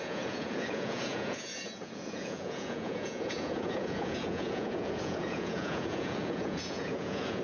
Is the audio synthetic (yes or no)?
yes